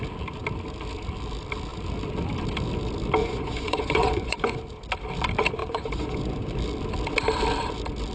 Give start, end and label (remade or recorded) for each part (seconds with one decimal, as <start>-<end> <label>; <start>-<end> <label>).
0.0-3.2 recorded; 3.2-4.6 remade; 4.6-5.6 recorded; 5.6-6.2 remade; 6.2-8.1 recorded